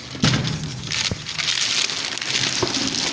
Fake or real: real